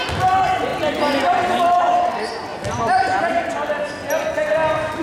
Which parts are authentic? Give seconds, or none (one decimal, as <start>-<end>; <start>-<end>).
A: 0.0-2.5; 3.7-5.0